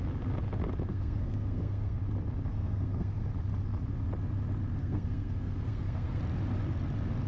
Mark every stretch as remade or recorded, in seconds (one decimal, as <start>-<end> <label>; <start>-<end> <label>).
0.0-0.9 recorded; 0.9-2.0 remade; 2.0-2.5 recorded; 2.5-3.2 remade; 3.2-4.8 recorded; 4.8-6.2 remade; 6.2-7.3 recorded